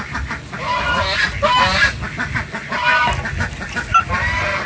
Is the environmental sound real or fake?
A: real